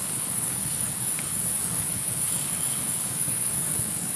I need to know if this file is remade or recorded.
remade